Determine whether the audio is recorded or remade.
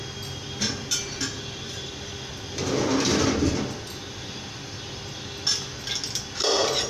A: recorded